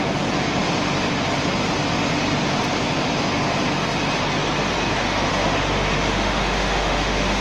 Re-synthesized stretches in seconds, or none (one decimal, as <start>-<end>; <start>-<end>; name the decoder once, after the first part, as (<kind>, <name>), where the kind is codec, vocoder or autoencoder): 5.3-7.4 (autoencoder, DAC-VAE)